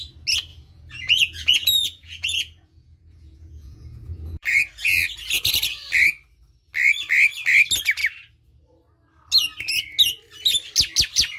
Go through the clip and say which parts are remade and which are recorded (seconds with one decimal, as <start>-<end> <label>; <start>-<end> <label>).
0.0-0.5 recorded; 0.5-4.7 remade; 4.7-11.4 recorded